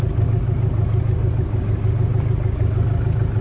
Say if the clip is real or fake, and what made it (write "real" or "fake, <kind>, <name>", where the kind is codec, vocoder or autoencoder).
real